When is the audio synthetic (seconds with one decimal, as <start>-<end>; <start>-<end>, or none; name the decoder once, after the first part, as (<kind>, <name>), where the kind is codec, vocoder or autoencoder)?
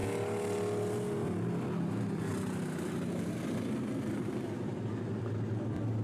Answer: none